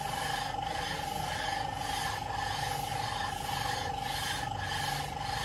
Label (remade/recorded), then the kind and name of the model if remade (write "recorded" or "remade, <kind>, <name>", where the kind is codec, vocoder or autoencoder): recorded